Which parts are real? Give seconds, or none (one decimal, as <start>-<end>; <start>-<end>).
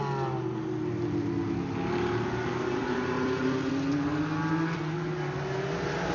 0.0-2.8; 3.7-6.1